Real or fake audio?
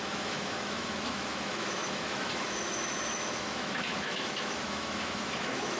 fake